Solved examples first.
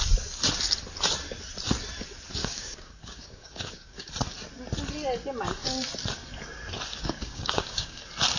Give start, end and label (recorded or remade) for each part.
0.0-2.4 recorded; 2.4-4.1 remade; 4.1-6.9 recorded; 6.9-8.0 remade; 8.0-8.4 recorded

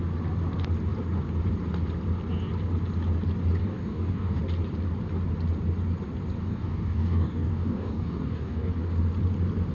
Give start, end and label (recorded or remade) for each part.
0.0-3.6 recorded; 3.6-4.4 remade; 4.4-6.4 recorded; 6.4-8.7 remade; 8.7-9.7 recorded

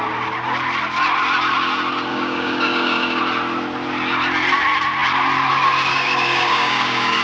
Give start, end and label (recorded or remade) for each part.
0.0-2.1 recorded; 2.1-3.2 remade; 3.2-5.9 recorded; 5.9-7.2 remade

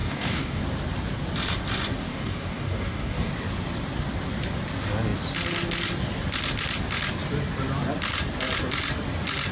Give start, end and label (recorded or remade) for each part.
0.0-0.6 remade; 0.6-2.1 recorded; 2.1-3.3 remade; 3.3-9.5 recorded